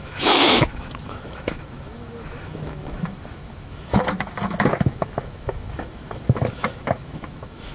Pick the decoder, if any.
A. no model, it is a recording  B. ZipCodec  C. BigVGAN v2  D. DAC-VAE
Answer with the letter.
D